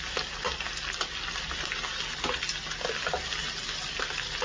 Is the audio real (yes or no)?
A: yes